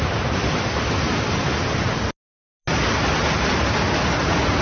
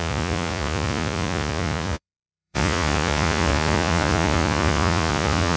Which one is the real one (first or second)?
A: first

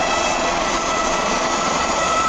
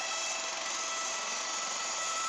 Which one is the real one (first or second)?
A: second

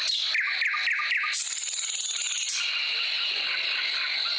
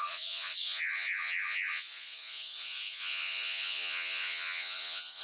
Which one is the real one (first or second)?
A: first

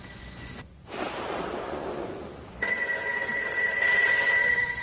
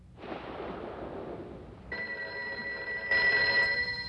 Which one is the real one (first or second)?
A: second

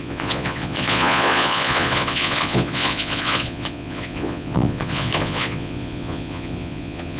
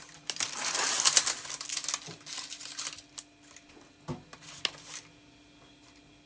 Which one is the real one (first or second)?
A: second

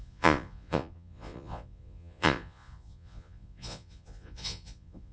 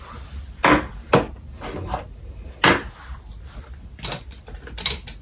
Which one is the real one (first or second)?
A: second